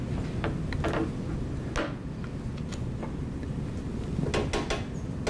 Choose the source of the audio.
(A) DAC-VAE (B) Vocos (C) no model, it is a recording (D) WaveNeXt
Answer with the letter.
C